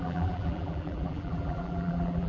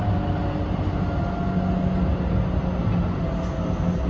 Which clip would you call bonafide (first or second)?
second